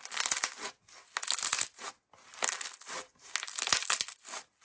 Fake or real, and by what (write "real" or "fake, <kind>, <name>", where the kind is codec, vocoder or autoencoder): real